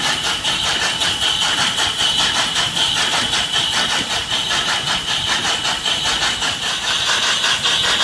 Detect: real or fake real